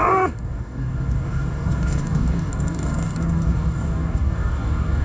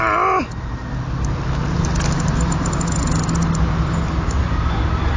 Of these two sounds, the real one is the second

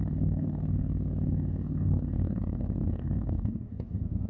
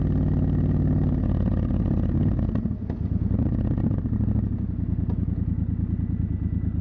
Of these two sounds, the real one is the second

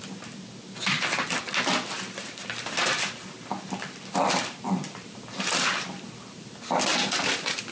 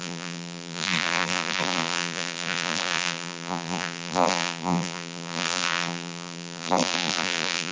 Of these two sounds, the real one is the first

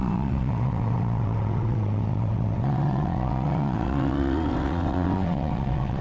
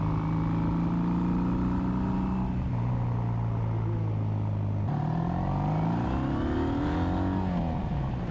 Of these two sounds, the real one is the second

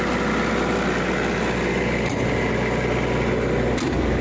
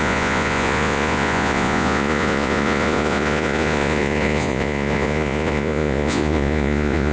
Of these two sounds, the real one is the first